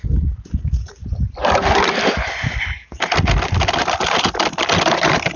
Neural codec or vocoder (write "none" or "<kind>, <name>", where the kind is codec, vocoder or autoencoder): none